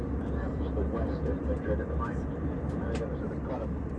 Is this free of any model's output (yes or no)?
no